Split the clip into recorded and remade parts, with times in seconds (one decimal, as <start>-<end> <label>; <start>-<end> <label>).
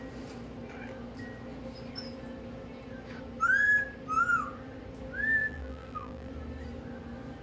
0.0-5.4 recorded; 5.4-6.3 remade; 6.3-7.4 recorded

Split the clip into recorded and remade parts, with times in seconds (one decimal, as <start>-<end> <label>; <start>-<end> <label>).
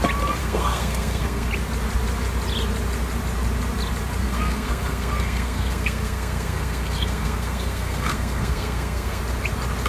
0.0-0.4 recorded; 0.4-1.5 remade; 1.5-4.2 recorded; 4.2-9.2 remade; 9.2-9.9 recorded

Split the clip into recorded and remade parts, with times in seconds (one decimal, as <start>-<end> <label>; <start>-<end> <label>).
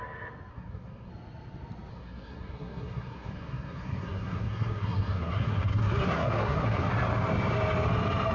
0.0-0.5 recorded; 0.5-1.1 remade; 1.1-1.9 recorded; 1.9-6.9 remade; 6.9-8.3 recorded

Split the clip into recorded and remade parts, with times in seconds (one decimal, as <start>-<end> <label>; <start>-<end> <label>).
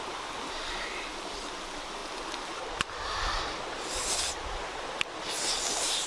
0.0-6.1 recorded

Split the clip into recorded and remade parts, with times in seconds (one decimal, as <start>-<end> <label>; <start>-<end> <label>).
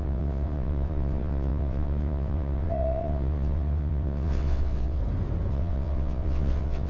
0.0-5.0 remade; 5.0-5.5 recorded; 5.5-6.9 remade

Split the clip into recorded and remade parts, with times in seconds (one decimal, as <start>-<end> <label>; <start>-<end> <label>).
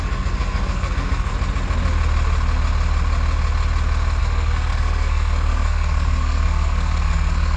0.0-1.3 remade; 1.3-4.2 recorded; 4.2-7.6 remade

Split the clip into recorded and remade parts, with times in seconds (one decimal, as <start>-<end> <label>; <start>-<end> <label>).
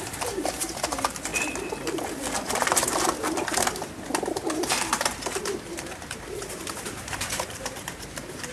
0.0-1.3 remade; 1.3-4.3 recorded; 4.3-8.5 remade